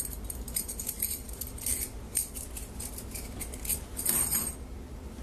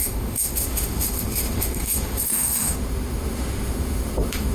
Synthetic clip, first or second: second